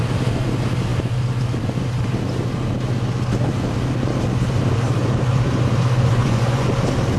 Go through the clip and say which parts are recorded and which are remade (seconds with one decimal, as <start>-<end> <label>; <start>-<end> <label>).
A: 0.0-6.1 recorded; 6.1-6.7 remade; 6.7-7.2 recorded